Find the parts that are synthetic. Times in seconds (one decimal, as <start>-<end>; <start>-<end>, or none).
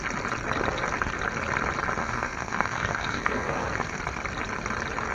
2.0-4.0